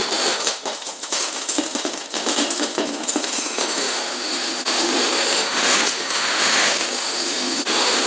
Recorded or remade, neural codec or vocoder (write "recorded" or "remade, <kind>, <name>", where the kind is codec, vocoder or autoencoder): remade, autoencoder, DAC-VAE